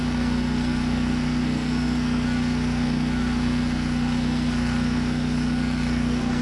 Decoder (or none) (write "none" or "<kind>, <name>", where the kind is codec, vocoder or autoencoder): codec, SNAC